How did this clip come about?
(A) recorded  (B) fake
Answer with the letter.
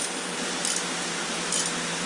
A